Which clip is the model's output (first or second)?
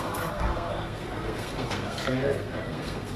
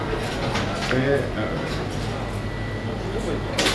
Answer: first